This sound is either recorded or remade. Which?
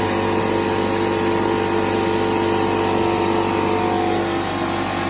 recorded